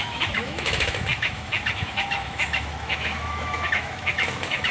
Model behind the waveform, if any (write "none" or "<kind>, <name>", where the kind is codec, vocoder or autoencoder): autoencoder, DAC-VAE